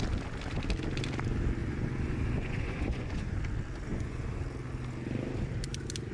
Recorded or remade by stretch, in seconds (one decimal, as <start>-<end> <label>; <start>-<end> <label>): 0.0-1.6 recorded; 1.6-3.4 remade; 3.4-3.9 recorded; 3.9-4.4 remade; 4.4-6.1 recorded